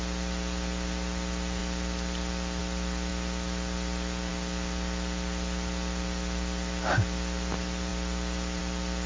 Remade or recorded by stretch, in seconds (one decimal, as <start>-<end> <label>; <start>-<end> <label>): 0.0-9.1 recorded